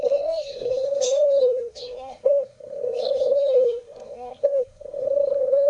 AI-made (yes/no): yes